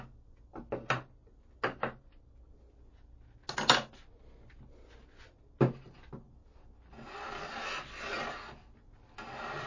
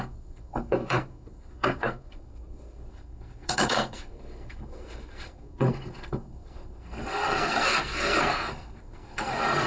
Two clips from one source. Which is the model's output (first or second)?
second